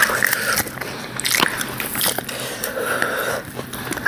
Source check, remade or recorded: recorded